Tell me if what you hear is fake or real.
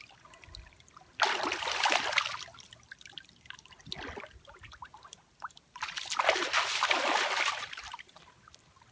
real